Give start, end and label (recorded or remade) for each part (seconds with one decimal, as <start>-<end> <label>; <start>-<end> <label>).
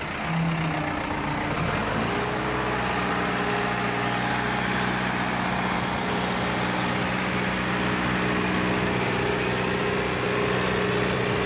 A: 0.0-11.5 recorded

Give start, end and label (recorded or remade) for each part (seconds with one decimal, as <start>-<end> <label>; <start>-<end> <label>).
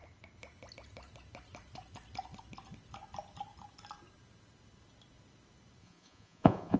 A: 0.0-5.8 recorded; 5.8-6.8 remade